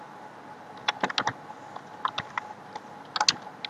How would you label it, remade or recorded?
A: recorded